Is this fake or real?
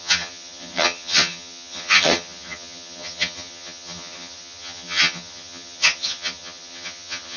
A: fake